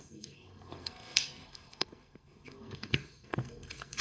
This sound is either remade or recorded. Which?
remade